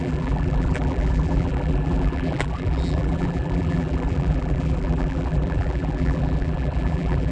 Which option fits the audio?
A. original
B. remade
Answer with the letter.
B